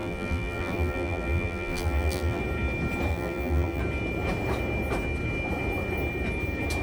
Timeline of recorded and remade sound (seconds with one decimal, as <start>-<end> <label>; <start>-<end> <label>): 0.0-2.4 remade; 2.4-3.1 recorded; 3.1-3.8 remade; 3.8-6.8 recorded